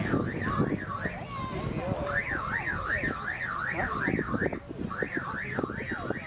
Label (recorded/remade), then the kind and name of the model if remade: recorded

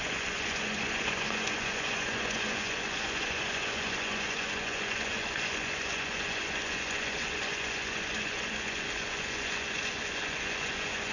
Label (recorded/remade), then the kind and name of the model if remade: remade, vocoder, Vocos